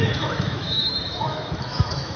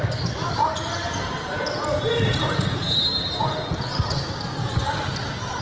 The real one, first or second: second